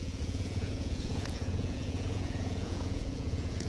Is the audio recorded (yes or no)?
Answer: no